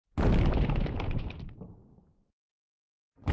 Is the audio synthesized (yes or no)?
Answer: no